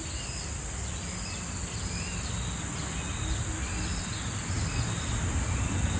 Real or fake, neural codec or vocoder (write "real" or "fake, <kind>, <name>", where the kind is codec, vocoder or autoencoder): real